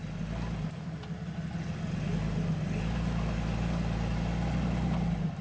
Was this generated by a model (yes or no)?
no